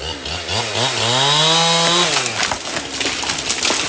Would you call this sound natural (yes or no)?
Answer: yes